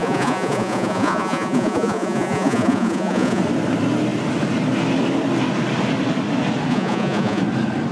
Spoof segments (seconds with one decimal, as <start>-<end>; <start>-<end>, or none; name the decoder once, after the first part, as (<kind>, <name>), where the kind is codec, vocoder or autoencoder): 0.0-3.4 (vocoder, Vocos); 6.7-7.4